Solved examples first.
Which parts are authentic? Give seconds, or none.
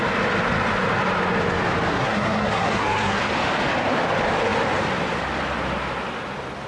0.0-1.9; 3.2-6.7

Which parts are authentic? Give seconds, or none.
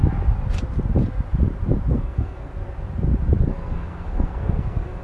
0.0-1.9; 2.5-3.4